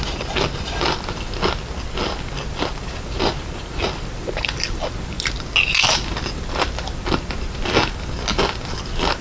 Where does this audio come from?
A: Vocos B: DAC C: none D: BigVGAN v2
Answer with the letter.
C